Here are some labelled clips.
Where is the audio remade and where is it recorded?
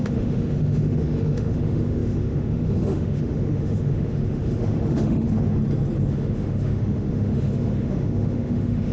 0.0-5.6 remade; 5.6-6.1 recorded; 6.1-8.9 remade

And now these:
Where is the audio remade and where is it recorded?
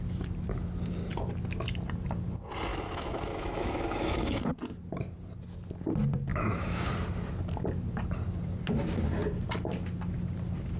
0.0-2.7 recorded; 2.7-4.4 remade; 4.4-6.3 recorded; 6.3-6.9 remade; 6.9-10.8 recorded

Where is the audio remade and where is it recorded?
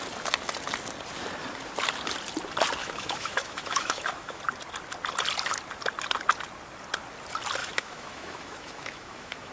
0.0-2.8 recorded; 2.8-4.4 remade; 4.4-7.6 recorded; 7.6-9.5 remade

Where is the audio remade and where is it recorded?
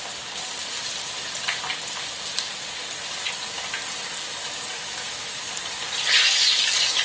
0.0-4.4 recorded; 4.4-5.5 remade; 5.5-7.0 recorded